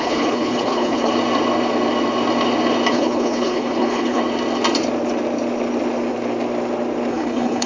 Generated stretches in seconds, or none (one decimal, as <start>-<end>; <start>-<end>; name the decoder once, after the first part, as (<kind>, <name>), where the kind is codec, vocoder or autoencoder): 0.0-1.1 (codec, HILCodec); 2.9-4.2; 7.1-7.7